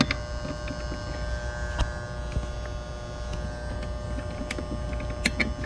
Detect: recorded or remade recorded